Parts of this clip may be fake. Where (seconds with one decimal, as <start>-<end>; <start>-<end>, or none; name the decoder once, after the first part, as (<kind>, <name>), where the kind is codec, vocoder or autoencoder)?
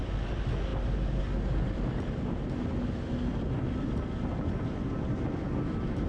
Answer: none